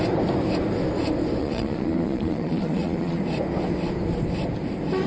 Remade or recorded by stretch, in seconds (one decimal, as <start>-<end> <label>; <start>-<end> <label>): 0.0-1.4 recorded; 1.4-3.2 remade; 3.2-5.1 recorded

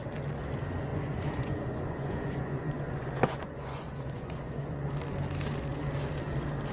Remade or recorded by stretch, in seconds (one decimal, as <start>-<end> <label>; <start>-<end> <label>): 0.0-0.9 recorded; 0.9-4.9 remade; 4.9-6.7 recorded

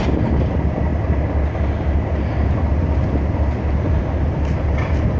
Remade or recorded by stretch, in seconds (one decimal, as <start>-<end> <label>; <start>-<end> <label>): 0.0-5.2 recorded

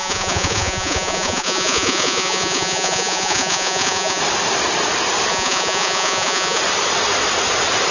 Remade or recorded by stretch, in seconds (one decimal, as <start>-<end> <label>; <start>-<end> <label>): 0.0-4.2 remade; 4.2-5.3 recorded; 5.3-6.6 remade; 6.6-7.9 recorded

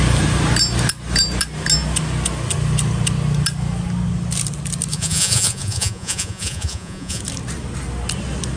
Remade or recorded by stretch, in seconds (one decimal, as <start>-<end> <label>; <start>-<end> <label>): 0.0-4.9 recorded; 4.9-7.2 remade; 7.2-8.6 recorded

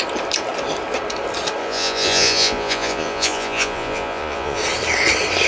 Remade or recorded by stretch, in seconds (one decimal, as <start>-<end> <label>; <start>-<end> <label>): 0.0-1.6 recorded; 1.6-4.6 remade; 4.6-5.5 recorded